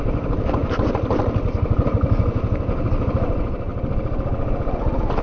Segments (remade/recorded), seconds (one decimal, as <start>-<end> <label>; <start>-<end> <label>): 0.0-0.6 remade; 0.6-1.6 recorded; 1.6-3.7 remade; 3.7-5.2 recorded